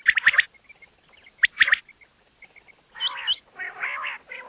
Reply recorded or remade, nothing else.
recorded